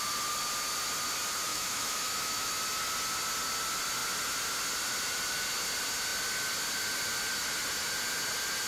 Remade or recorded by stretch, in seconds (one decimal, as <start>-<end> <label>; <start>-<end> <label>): 0.0-1.5 recorded; 1.5-2.5 remade; 2.5-8.7 recorded